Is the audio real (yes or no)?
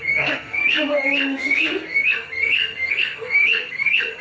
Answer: no